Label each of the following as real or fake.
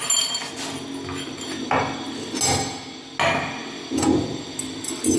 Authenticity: real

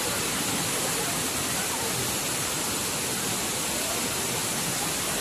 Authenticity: real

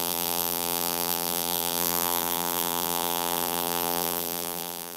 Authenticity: fake